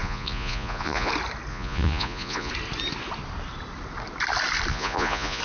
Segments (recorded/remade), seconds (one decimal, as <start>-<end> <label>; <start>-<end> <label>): 0.0-1.1 remade; 1.1-1.5 recorded; 1.5-2.5 remade; 2.5-4.7 recorded; 4.7-5.4 remade